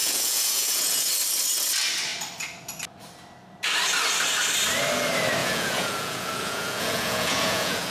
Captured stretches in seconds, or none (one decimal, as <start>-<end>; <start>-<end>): 1.1-5.4